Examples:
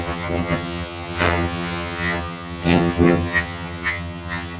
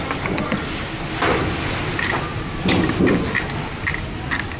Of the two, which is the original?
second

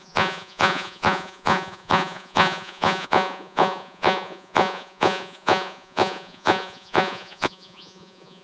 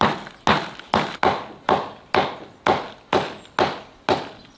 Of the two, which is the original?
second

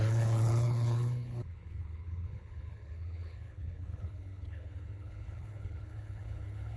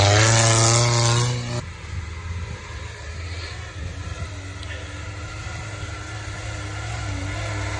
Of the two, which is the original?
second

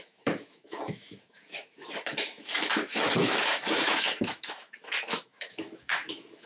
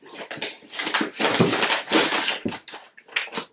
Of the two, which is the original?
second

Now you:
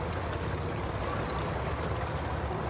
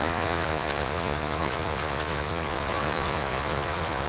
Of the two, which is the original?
first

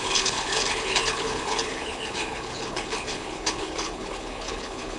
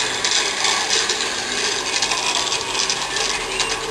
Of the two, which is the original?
second